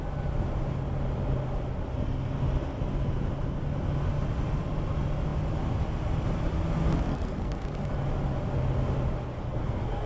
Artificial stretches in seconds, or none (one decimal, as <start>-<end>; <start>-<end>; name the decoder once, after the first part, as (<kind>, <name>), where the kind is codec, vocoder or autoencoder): 7.1-7.9 (codec, SNAC); 9.5-10.1